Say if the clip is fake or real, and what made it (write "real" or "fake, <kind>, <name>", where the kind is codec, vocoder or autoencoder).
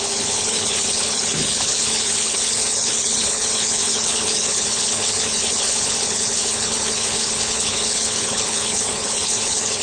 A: fake, codec, HILCodec